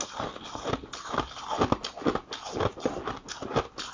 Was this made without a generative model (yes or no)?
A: yes